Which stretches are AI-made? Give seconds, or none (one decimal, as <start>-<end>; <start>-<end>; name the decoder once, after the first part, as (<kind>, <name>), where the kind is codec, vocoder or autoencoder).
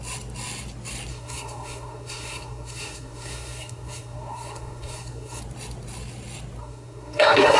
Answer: 1.1-5.4 (codec, SNAC); 6.6-7.6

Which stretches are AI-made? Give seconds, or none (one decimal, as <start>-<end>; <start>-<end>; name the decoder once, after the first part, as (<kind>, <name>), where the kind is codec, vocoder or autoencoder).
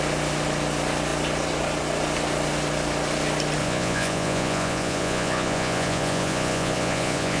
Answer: 3.6-7.4 (vocoder, Vocos)